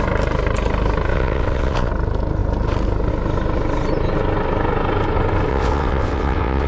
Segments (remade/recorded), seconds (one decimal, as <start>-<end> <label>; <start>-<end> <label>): 0.0-1.1 recorded; 1.1-1.9 remade; 1.9-5.5 recorded; 5.5-6.7 remade